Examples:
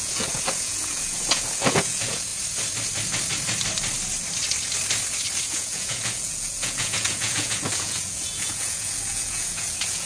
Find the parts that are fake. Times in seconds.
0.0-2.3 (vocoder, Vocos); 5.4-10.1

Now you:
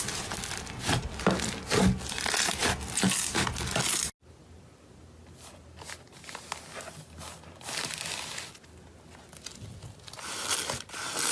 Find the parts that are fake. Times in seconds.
none

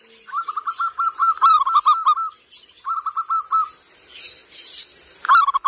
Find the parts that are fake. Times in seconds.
none

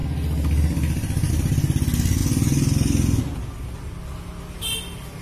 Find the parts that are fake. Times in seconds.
none

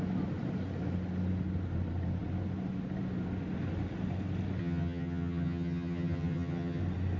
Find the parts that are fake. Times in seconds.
4.6-6.8 (vocoder, HiFi-GAN)

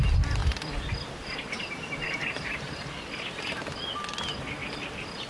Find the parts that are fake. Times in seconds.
0.4-3.4 (vocoder, BigVGAN v2)

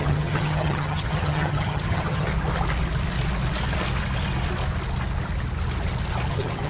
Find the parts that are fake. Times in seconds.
0.0-2.3 (vocoder, HiFi-GAN); 6.3-6.7